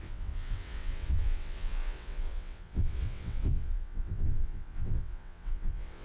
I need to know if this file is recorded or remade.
remade